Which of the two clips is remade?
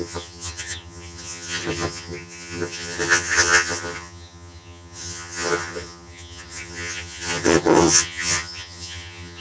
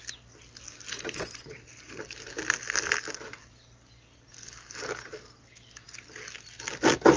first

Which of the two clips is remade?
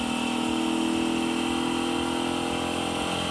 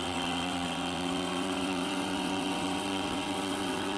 second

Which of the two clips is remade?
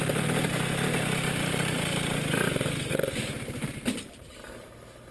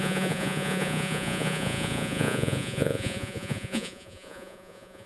second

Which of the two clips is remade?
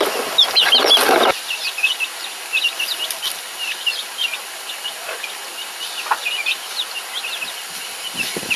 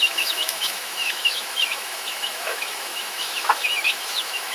second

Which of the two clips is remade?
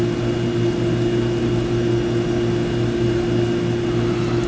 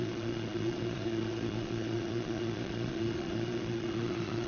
second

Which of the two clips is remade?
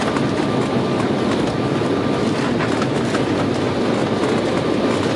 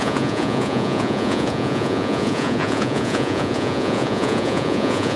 second